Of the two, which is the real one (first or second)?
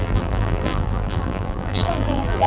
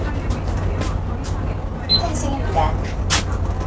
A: second